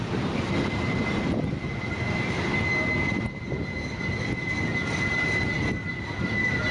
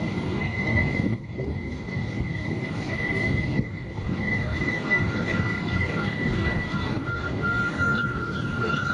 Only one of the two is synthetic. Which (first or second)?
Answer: second